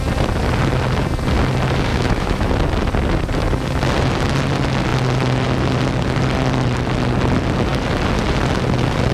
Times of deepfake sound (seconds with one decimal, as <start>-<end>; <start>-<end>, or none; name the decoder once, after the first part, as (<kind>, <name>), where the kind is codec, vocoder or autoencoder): 1.9-2.5 (autoencoder, DAC-VAE)